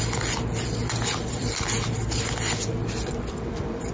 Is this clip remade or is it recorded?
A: remade